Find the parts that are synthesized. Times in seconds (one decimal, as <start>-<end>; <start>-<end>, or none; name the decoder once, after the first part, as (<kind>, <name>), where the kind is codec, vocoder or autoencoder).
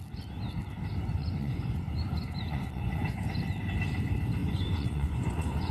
1.2-3.2 (vocoder, Vocos); 4.4-5.7